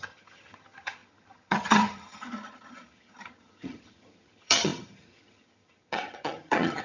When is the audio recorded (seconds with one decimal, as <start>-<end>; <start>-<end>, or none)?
none